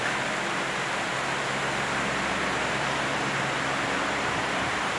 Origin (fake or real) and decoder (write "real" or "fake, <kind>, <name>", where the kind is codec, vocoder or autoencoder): real